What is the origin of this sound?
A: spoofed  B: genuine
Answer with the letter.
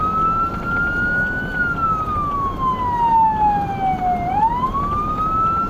B